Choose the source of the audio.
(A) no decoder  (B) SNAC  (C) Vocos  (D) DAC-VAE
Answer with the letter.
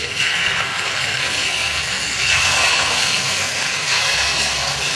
B